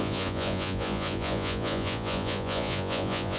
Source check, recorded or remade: remade